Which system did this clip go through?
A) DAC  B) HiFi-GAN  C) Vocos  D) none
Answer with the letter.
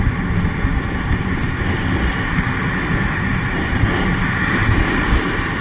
D